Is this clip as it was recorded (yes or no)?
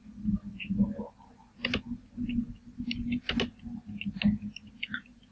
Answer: yes